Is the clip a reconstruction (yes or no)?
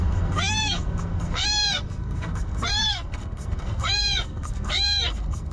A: yes